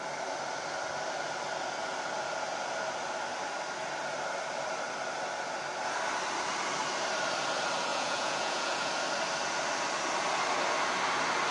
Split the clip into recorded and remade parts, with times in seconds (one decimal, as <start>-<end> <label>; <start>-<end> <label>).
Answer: 0.0-7.9 recorded; 7.9-8.9 remade; 8.9-11.5 recorded